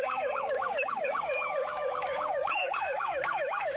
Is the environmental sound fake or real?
fake